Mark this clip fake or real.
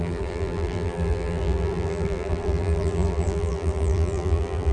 fake